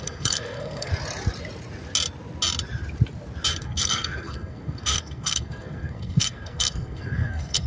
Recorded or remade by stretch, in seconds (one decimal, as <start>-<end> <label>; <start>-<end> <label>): 0.0-0.9 remade; 0.9-3.6 recorded; 3.6-7.7 remade